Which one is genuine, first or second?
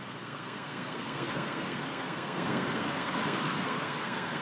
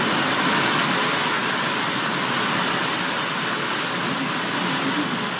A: second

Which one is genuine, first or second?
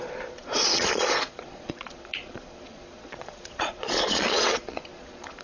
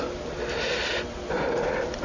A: second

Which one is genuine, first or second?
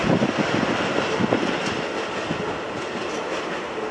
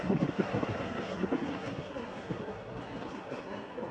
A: first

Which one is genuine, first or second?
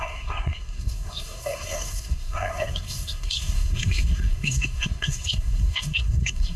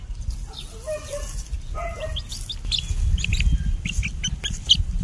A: second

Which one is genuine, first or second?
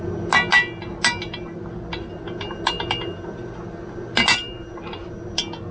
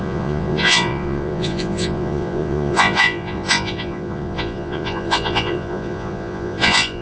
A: first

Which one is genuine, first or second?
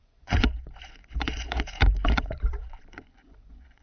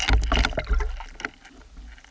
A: second